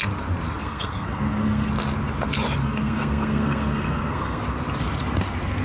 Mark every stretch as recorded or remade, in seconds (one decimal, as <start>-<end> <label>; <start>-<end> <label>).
0.0-0.6 recorded; 0.6-1.7 remade; 1.7-2.6 recorded; 2.6-4.4 remade; 4.4-5.6 recorded